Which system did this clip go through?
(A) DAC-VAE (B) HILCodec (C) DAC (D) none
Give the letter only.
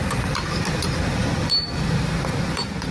D